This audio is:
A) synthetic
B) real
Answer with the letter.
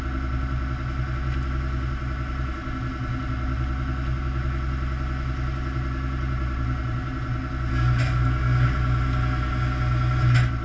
B